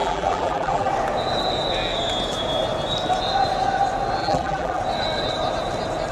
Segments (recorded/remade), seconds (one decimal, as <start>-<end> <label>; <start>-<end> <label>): 0.0-0.9 remade; 0.9-4.2 recorded; 4.2-4.8 remade; 4.8-6.1 recorded